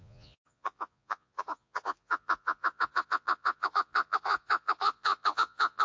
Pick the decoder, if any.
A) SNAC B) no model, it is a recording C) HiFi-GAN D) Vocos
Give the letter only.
D